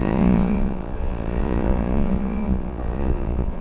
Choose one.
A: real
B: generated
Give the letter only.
B